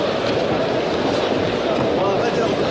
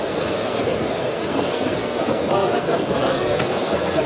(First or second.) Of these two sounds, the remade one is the second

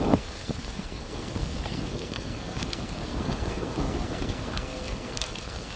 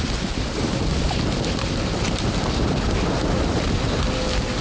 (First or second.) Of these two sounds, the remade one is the first